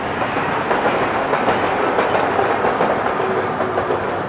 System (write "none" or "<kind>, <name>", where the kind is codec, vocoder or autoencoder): none